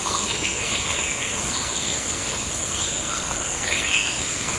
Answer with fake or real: fake